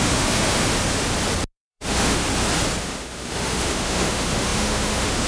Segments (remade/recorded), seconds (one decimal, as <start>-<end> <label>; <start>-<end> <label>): 0.0-0.7 remade; 0.7-1.7 recorded; 1.7-2.2 remade; 2.2-2.8 recorded; 2.8-5.3 remade